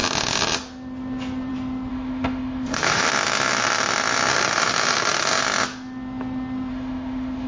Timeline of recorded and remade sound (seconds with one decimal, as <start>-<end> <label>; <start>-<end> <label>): 0.0-1.9 recorded; 1.9-3.0 remade; 3.0-4.3 recorded; 4.3-5.4 remade; 5.4-6.7 recorded; 6.7-7.5 remade